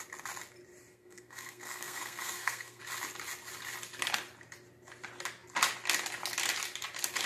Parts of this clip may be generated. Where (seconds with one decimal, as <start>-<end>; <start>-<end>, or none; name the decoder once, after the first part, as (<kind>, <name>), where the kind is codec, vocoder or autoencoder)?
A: 0.9-2.8 (codec, SNAC)